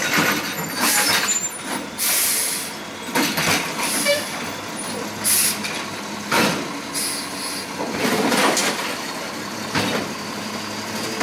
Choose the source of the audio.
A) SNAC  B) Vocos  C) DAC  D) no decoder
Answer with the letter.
D